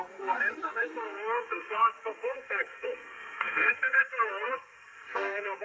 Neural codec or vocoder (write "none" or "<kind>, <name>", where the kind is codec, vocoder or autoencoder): codec, SNAC